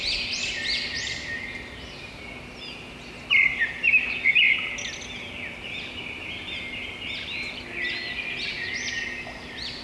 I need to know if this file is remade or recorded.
recorded